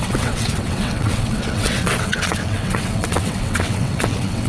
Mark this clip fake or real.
fake